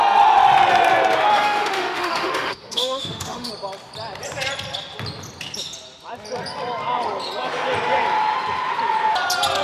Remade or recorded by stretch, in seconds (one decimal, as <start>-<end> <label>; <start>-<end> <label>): 0.0-1.3 recorded; 1.3-3.5 remade; 3.5-9.6 recorded